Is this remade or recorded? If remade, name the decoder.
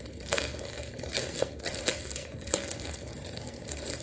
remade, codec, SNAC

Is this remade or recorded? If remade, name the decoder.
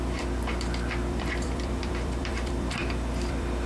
remade, vocoder, BigVGAN v2